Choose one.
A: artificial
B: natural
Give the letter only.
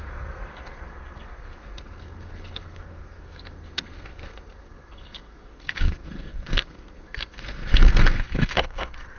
A